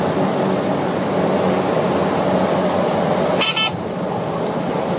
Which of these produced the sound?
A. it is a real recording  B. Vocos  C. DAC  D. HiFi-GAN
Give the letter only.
A